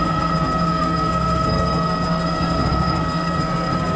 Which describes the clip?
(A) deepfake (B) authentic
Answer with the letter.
A